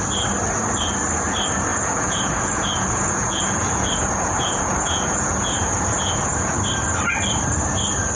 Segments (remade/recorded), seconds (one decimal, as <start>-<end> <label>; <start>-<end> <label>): 0.0-1.7 recorded; 1.7-6.6 remade; 6.6-8.1 recorded